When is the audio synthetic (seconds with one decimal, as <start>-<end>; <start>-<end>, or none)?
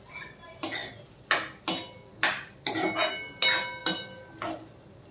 none